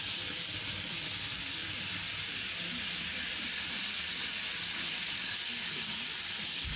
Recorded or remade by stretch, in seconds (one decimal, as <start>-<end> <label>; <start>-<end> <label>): 0.0-4.5 remade; 4.5-5.1 recorded; 5.1-6.8 remade